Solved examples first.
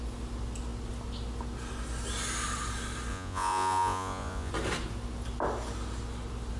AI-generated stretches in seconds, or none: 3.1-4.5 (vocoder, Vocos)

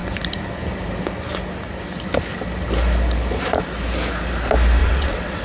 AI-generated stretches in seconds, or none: 4.8-5.4 (vocoder, WaveNeXt)

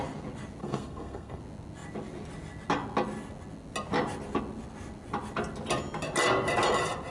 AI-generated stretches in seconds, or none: 0.6-1.4 (codec, SNAC)

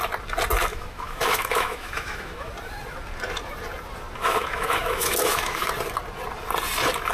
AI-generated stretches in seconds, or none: 0.7-2.5 (autoencoder, DAC-VAE); 4.2-5.7